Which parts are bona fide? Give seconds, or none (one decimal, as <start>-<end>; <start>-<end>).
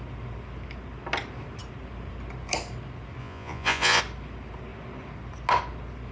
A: 0.0-3.2; 4.0-6.1